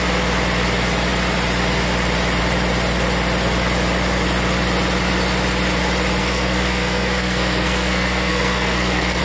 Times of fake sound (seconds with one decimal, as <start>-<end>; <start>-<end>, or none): 6.2-9.2